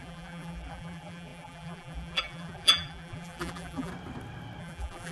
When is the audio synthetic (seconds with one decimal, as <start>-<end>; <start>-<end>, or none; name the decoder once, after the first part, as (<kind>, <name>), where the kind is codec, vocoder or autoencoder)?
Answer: 0.0-3.9 (vocoder, BigVGAN v2); 4.6-5.1